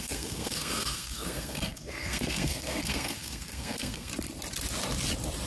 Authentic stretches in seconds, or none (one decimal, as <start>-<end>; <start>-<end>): 4.1-5.5